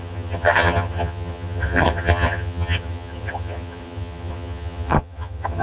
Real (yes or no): no